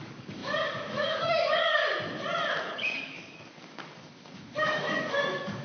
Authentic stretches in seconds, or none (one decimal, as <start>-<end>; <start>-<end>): 1.8-2.6